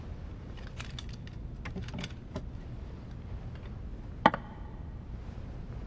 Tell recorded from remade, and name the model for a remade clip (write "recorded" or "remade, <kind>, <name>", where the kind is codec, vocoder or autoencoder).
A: recorded